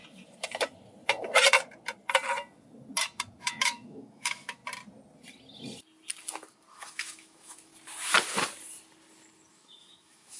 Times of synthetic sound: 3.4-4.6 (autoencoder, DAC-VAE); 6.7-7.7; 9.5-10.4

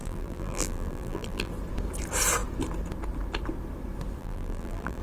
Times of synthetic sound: 0.0-1.5 (vocoder, BigVGAN v2); 4.2-5.0

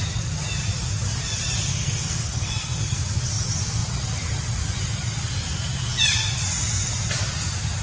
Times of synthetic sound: 1.7-3.0 (codec, SNAC)

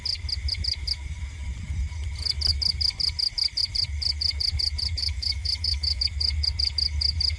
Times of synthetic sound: 5.0-6.0 (autoencoder, DAC-VAE)

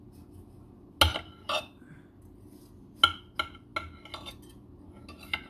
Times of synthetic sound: 1.1-2.6 (vocoder, BigVGAN v2)

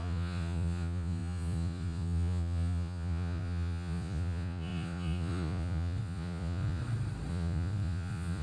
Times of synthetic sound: 0.0-6.8 (vocoder, Vocos); 7.3-8.4

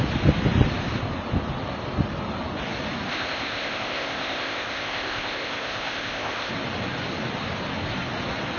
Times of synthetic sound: 3.1-6.5 (codec, ZipCodec)

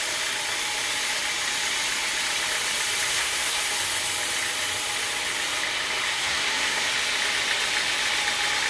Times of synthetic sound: 3.1-3.7 (codec, SNAC); 6.1-6.9